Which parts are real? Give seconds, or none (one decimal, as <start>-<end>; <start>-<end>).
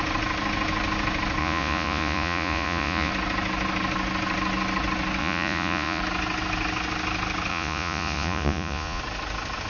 0.0-1.4; 3.1-5.2; 6.0-7.5; 9.0-9.7